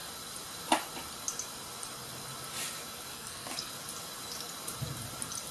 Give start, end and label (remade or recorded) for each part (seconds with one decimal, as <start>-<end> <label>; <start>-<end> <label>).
0.0-3.1 recorded; 3.1-3.7 remade; 3.7-5.5 recorded